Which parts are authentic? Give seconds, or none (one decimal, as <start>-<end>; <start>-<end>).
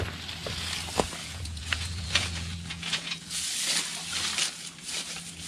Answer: 0.0-1.2; 3.5-5.5